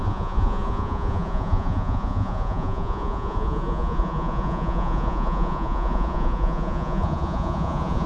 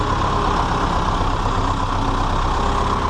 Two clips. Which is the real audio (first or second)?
second